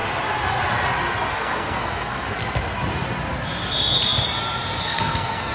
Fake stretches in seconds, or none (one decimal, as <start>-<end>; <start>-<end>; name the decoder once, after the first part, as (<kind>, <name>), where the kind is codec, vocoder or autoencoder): 1.3-2.4 (codec, SNAC); 4.8-5.5